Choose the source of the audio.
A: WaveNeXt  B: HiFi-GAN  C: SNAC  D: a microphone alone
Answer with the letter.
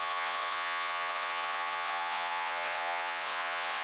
A